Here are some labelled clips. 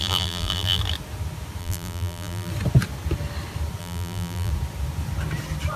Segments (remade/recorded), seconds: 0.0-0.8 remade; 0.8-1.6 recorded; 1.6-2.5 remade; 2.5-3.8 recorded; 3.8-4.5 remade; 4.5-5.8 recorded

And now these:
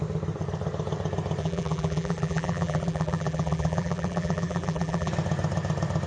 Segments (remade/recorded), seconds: 0.0-1.4 recorded; 1.4-5.1 remade; 5.1-6.1 recorded

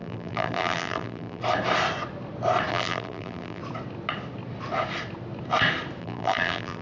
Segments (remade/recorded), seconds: 0.0-1.4 remade; 1.4-2.7 recorded; 2.7-3.6 remade; 3.6-6.0 recorded; 6.0-6.8 remade

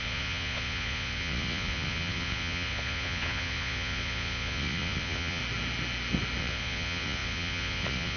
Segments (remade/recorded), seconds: 0.0-5.4 remade; 5.4-6.4 recorded; 6.4-8.2 remade

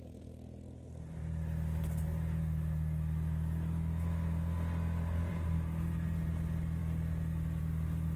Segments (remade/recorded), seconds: 0.0-8.2 recorded

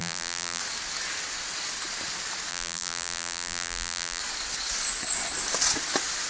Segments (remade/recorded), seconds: 0.0-0.6 remade; 0.6-2.5 recorded; 2.5-4.2 remade; 4.2-6.3 recorded

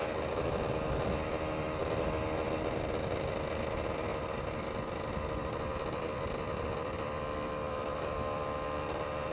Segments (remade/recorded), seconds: 0.0-9.3 recorded

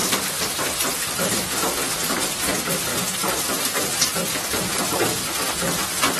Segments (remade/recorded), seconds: 0.0-1.1 remade; 1.1-6.2 recorded